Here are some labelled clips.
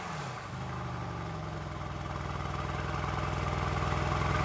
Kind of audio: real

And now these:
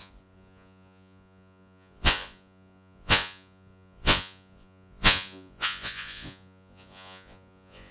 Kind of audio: fake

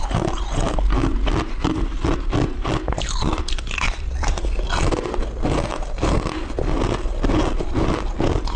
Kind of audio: real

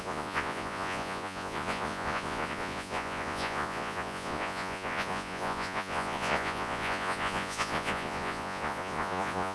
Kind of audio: fake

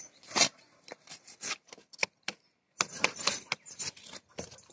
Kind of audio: real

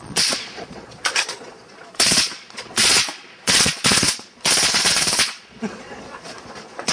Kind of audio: fake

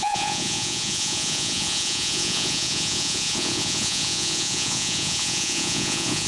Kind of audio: fake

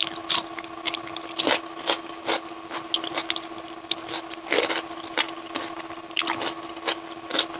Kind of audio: real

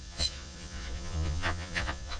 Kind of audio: fake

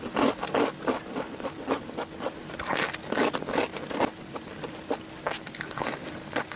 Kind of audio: real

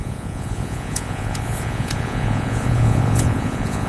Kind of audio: fake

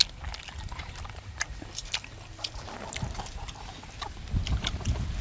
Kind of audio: real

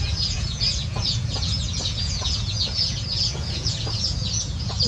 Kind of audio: fake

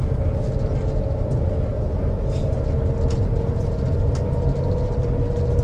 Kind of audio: real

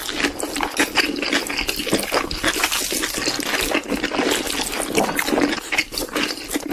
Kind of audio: real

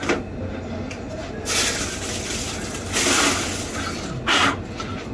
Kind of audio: real